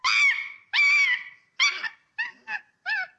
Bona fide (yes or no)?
yes